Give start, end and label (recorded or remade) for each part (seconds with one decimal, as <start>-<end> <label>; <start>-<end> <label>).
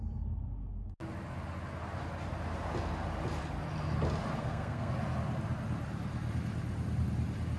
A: 0.0-4.4 recorded; 4.4-4.9 remade; 4.9-7.6 recorded